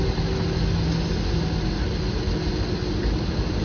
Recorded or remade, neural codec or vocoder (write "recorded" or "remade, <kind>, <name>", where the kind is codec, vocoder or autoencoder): recorded